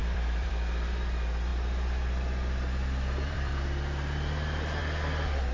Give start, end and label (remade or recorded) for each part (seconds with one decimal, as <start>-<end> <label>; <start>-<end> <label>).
0.0-0.5 remade; 0.5-1.5 recorded; 1.5-4.8 remade; 4.8-5.5 recorded